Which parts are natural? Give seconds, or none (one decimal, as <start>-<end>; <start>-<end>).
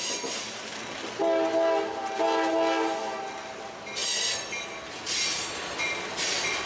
0.0-6.7